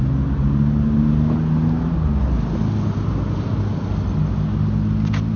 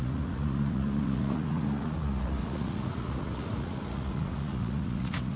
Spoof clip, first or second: second